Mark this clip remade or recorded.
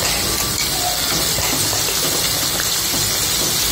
recorded